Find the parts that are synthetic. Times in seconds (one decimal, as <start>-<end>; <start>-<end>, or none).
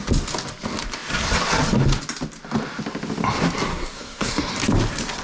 3.7-4.5